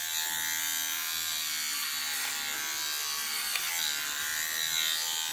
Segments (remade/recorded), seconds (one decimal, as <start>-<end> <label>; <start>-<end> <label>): 0.0-5.3 recorded